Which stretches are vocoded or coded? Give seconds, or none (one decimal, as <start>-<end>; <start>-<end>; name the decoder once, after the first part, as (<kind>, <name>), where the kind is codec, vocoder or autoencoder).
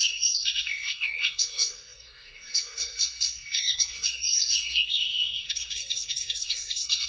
0.0-7.1 (codec, SNAC)